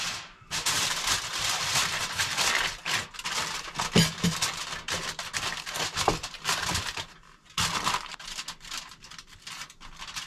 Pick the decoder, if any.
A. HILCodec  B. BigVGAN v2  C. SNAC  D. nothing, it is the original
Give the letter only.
D